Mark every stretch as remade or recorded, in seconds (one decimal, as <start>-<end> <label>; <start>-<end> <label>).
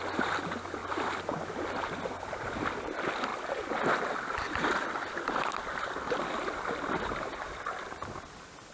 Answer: 0.0-8.7 recorded